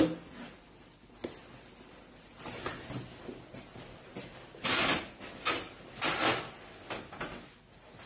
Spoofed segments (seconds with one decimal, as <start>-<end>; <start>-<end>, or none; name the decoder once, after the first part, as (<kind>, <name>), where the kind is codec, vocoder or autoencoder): none